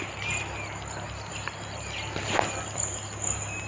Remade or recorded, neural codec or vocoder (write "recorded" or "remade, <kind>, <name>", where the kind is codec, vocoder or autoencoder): recorded